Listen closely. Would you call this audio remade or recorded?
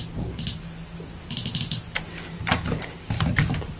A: remade